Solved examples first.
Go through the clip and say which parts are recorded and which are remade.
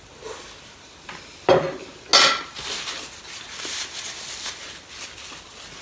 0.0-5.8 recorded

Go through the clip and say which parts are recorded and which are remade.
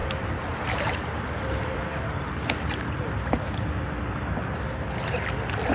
0.0-3.4 remade; 3.4-5.7 recorded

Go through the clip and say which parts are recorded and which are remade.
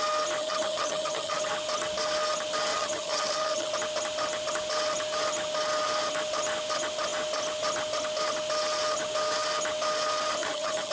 0.0-0.4 recorded; 0.4-1.5 remade; 1.5-2.7 recorded; 2.7-3.7 remade; 3.7-10.4 recorded; 10.4-10.9 remade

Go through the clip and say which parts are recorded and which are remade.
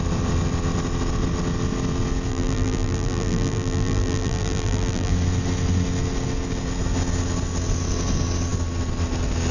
0.0-2.3 recorded; 2.3-5.1 remade; 5.1-9.5 recorded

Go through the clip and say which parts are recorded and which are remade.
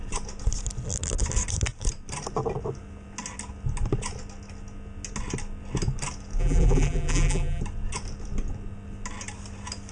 0.0-6.4 recorded; 6.4-7.6 remade; 7.6-9.9 recorded